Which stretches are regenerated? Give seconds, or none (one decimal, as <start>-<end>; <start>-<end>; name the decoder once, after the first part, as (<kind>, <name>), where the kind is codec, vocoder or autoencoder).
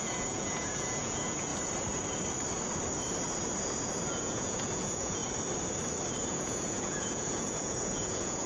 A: 0.0-1.5 (vocoder, Vocos); 4.1-5.2; 6.3-8.5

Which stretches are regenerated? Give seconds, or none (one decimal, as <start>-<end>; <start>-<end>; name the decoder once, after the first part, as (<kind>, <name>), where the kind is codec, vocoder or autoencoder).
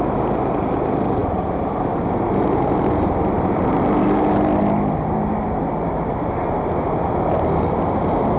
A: none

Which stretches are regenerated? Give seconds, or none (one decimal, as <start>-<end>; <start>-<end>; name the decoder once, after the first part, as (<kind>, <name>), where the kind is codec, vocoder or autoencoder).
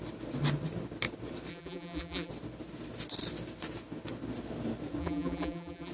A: 1.5-2.3 (vocoder, BigVGAN v2); 5.0-5.9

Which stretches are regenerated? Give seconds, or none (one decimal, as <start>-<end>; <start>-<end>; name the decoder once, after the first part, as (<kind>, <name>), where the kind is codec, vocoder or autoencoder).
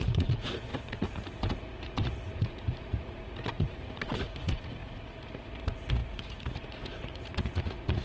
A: 0.0-8.0 (vocoder, Vocos)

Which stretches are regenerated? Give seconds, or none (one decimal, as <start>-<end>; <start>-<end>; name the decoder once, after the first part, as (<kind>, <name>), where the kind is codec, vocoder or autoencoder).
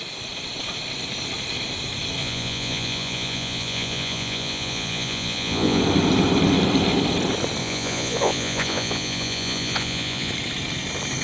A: 2.2-5.8 (vocoder, Vocos); 7.6-10.3